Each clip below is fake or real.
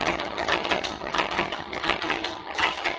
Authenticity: fake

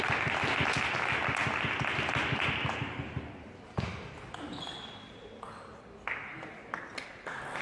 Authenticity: real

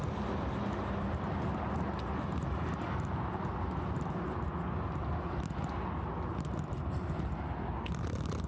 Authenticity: real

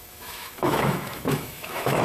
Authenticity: fake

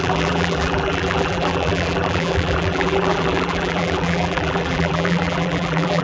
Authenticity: fake